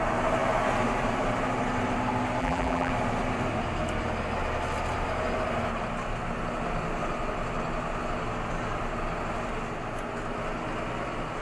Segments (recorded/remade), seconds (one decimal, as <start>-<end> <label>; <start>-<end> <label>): 0.0-2.4 recorded; 2.4-2.9 remade; 2.9-11.4 recorded